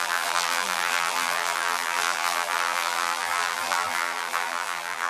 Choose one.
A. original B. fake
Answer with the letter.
B